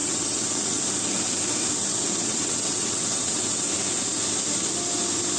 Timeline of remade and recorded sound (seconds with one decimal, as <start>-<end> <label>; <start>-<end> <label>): 0.0-0.8 remade; 0.8-1.9 recorded; 1.9-3.7 remade; 3.7-5.4 recorded